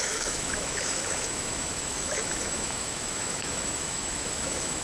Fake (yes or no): yes